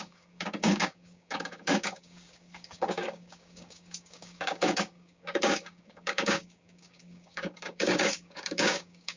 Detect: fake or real fake